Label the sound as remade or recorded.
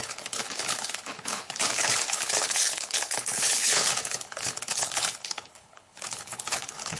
remade